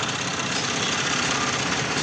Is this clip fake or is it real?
real